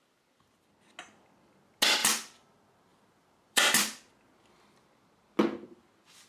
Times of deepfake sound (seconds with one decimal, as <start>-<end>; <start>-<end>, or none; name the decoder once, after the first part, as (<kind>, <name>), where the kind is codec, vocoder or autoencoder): 2.0-2.5 (vocoder, BigVGAN v2); 2.9-4.1